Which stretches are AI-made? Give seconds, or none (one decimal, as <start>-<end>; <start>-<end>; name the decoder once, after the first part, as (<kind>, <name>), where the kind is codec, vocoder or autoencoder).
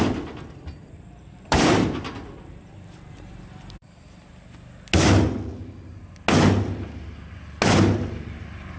0.8-4.3 (vocoder, BigVGAN v2)